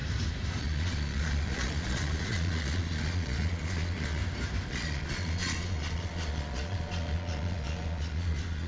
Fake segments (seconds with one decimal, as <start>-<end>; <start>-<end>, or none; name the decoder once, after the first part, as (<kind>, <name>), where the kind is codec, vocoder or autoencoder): 0.6-4.2 (vocoder, Vocos); 4.7-8.7

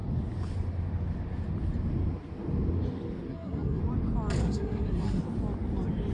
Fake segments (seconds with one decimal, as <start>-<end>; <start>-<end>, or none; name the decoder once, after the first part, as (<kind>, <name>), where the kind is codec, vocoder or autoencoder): 3.3-3.8 (codec, SNAC); 4.4-5.2

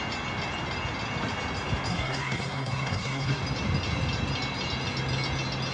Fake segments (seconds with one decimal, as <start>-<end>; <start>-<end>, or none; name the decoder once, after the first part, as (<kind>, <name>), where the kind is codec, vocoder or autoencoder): 1.9-3.4 (codec, SNAC)

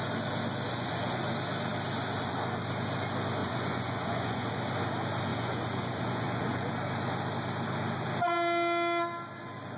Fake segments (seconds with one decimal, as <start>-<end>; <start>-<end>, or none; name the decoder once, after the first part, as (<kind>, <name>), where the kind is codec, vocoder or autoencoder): 0.7-1.2 (vocoder, Vocos); 3.4-4.5; 5.3-6.7

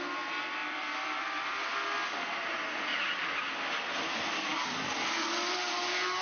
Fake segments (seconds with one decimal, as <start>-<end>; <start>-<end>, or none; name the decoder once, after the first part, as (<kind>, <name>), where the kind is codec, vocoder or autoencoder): 0.6-1.4 (vocoder, BigVGAN v2); 4.5-5.3

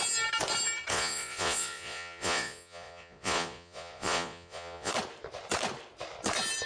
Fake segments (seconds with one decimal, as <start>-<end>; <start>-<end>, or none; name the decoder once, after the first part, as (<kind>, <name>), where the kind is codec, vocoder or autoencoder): 0.9-4.9 (vocoder, Vocos)

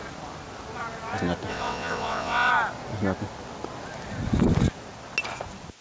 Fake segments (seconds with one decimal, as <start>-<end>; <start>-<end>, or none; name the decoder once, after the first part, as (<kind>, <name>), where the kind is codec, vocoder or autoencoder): 1.5-2.5 (vocoder, WaveNeXt)